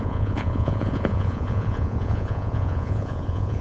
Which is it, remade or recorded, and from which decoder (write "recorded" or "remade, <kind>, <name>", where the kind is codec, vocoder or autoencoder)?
remade, vocoder, Vocos